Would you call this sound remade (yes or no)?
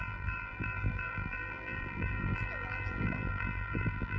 yes